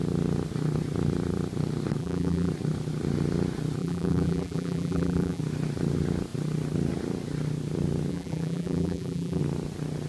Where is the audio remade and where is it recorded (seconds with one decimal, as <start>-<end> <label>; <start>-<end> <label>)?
0.0-2.0 recorded; 2.0-2.5 remade; 2.5-3.8 recorded; 3.8-5.4 remade; 5.4-8.1 recorded; 8.1-9.4 remade; 9.4-10.1 recorded